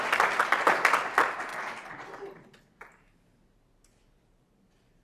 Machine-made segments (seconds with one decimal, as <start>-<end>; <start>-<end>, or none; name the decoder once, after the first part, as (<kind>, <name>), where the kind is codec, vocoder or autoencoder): none